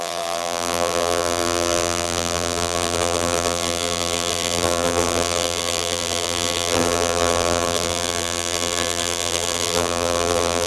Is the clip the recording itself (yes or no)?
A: no